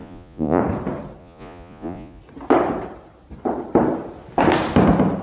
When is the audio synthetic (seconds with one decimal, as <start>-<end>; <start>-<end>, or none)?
0.0-0.6; 1.2-2.2